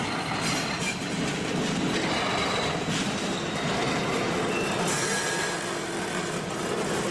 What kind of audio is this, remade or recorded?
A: recorded